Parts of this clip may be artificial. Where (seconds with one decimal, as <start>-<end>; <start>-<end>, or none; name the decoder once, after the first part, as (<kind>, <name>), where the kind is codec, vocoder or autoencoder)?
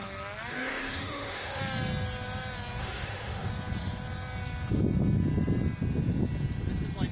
0.5-1.6 (autoencoder, DAC-VAE); 2.8-3.5